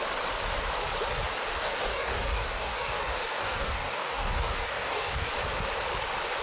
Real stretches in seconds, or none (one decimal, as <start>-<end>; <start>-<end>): 0.0-1.5; 5.3-6.4